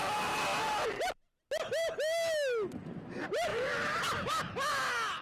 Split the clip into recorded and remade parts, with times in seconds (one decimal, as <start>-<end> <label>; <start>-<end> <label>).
0.0-5.2 recorded